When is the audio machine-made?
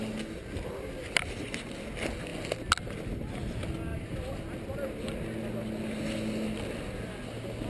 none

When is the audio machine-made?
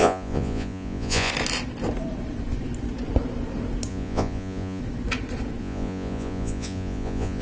0.0-1.3; 3.9-4.8; 5.6-7.4